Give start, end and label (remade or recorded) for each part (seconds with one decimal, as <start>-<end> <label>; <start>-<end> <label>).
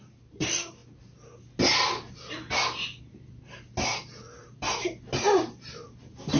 0.0-0.8 remade; 0.8-4.6 recorded; 4.6-6.4 remade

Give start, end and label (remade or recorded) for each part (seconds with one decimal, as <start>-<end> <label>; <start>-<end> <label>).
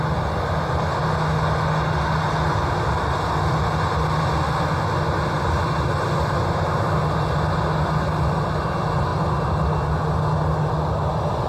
0.0-11.5 recorded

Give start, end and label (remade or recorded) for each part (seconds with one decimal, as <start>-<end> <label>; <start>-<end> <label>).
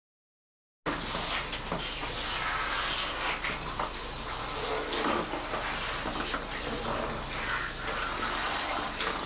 0.0-8.4 recorded; 8.4-9.3 remade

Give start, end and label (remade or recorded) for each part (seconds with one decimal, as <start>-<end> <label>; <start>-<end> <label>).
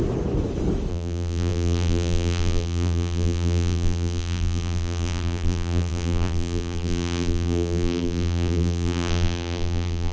0.0-0.9 recorded; 0.9-10.1 remade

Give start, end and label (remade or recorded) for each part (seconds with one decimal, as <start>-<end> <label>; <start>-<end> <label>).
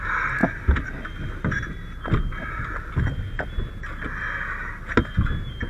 0.0-5.7 recorded